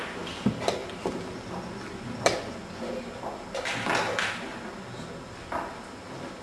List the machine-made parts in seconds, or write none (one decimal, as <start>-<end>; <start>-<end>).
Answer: none